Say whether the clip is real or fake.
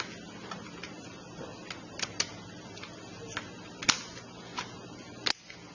real